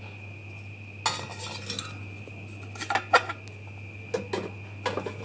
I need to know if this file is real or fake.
real